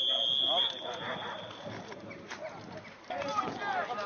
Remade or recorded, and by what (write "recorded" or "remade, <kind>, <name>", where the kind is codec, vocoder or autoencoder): recorded